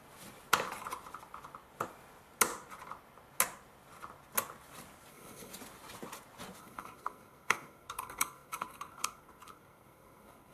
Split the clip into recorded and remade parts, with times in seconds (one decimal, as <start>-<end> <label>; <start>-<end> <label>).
0.0-5.1 recorded; 5.1-5.5 remade; 5.5-6.6 recorded; 6.6-10.5 remade